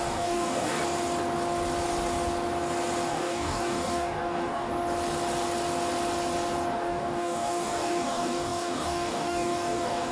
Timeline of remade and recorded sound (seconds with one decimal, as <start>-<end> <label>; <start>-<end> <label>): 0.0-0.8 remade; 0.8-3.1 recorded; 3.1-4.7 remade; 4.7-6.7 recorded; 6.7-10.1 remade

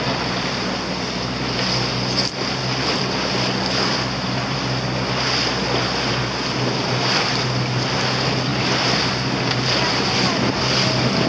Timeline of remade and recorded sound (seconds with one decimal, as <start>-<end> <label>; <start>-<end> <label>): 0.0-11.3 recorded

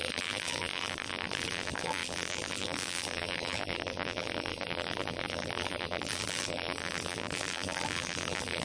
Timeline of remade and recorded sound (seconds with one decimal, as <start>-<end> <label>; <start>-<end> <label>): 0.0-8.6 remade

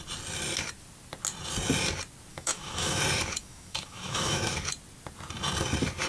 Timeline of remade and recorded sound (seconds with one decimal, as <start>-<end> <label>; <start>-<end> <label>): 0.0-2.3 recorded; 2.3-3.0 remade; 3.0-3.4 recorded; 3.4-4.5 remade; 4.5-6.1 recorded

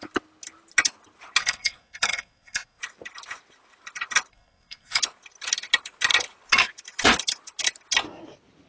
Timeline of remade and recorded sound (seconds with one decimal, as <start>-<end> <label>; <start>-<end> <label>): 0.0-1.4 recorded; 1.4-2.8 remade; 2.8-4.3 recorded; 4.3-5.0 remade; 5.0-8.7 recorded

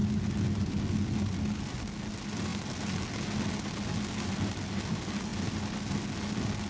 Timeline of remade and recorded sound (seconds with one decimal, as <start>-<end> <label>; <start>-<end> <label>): 0.0-6.7 recorded